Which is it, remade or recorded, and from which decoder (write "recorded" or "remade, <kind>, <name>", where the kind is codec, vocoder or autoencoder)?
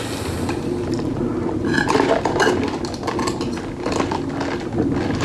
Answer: recorded